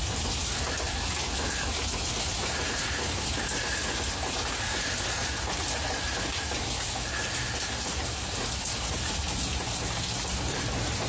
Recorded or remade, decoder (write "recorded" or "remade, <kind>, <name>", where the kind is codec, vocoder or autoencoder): recorded